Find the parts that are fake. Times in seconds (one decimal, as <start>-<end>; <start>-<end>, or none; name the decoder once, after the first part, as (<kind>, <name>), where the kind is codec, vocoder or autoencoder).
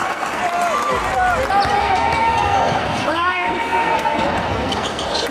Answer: 0.0-0.4 (codec, SNAC); 1.8-5.3